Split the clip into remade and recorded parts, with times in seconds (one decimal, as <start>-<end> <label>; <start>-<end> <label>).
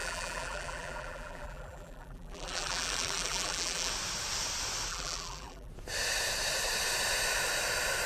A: 0.0-3.9 remade; 3.9-4.9 recorded; 4.9-5.7 remade; 5.7-8.1 recorded